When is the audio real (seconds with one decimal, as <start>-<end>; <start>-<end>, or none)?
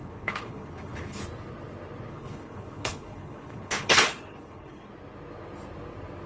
1.2-2.1; 4.9-6.3